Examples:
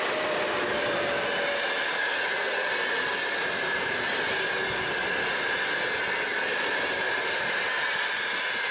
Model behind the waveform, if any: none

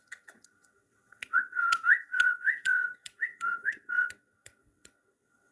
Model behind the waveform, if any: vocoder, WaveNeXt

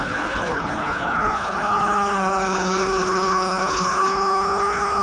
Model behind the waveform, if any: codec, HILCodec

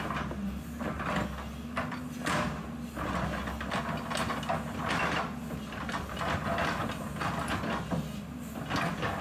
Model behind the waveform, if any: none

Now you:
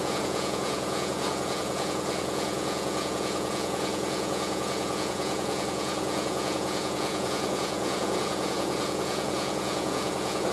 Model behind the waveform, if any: vocoder, Vocos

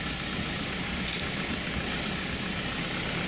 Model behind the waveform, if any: none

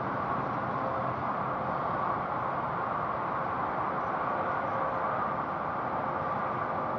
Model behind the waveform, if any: none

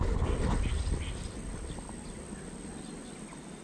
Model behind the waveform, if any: none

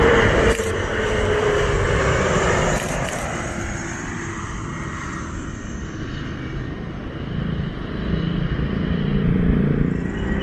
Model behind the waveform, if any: vocoder, BigVGAN v2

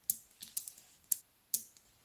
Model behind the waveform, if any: none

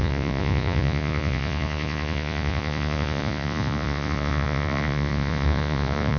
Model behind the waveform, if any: vocoder, Vocos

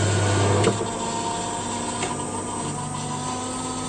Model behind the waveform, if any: none